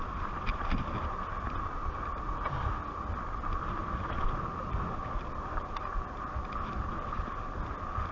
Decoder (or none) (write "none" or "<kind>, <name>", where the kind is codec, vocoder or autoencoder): none